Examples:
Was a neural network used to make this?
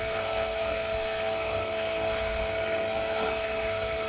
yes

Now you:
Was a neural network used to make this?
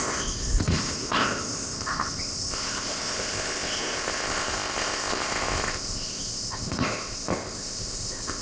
yes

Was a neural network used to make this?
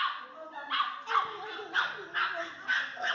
no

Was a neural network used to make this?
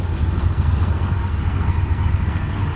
yes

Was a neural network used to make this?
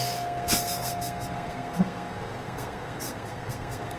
yes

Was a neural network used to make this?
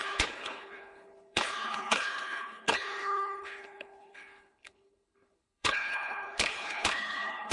yes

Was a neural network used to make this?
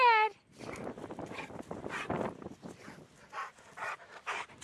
no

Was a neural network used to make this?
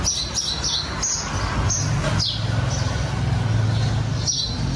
no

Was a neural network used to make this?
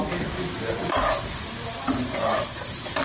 no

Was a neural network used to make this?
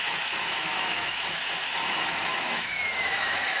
yes